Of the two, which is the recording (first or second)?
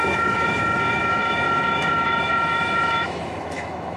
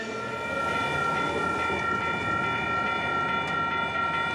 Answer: second